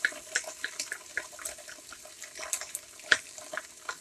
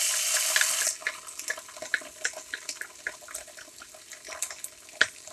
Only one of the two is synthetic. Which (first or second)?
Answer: first